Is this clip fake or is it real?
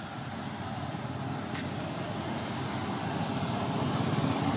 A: real